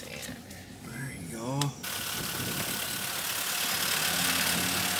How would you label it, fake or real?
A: real